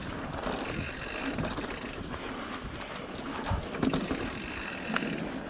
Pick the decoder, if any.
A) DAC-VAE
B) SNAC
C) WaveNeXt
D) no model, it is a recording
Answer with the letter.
D